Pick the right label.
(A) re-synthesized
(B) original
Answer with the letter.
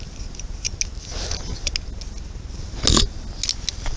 B